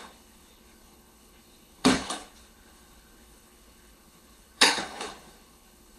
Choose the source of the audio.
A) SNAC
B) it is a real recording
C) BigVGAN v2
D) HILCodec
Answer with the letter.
D